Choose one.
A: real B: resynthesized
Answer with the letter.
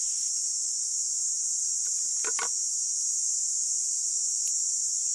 A